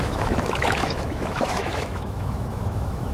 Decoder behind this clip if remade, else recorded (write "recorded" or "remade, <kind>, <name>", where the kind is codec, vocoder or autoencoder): remade, autoencoder, DAC-VAE